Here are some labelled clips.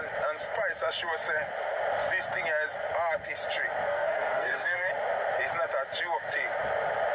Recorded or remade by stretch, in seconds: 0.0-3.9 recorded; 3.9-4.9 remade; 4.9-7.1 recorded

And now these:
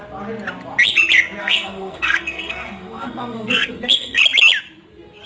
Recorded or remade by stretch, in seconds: 0.0-1.4 recorded; 1.4-4.2 remade; 4.2-5.3 recorded

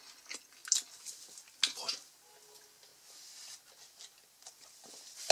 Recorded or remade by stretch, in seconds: 0.0-5.3 recorded

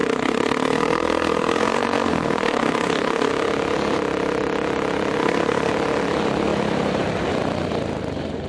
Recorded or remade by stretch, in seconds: 0.0-3.3 remade; 3.3-5.2 recorded; 5.2-5.7 remade; 5.7-8.5 recorded

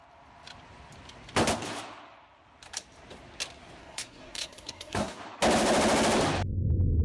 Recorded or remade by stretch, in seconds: 0.0-3.8 recorded; 3.8-5.2 remade; 5.2-7.0 recorded

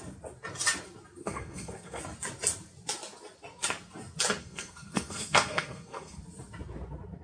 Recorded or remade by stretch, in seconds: 0.0-1.2 recorded; 1.2-2.0 remade; 2.0-4.4 recorded; 4.4-6.2 remade; 6.2-7.2 recorded

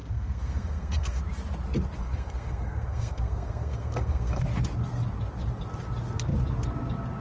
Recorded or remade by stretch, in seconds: 0.0-1.2 remade; 1.2-2.0 recorded; 2.0-4.4 remade; 4.4-7.2 recorded